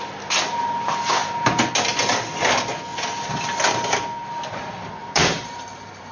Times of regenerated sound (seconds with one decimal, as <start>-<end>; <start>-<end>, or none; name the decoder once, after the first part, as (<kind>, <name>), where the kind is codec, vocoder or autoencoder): 5.0-6.1 (vocoder, BigVGAN v2)